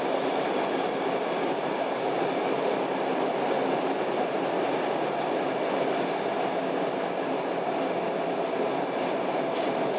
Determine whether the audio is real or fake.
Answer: real